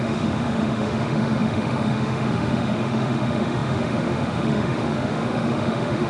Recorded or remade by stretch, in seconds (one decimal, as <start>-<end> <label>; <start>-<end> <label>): 0.0-6.1 remade